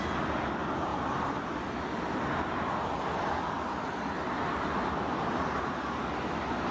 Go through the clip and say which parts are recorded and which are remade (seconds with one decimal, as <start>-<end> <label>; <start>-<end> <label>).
0.0-6.7 recorded